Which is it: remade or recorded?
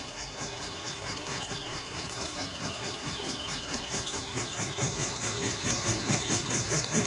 remade